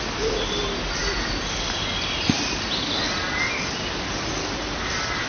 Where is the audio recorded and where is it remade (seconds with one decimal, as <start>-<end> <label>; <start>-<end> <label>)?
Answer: 0.0-5.3 recorded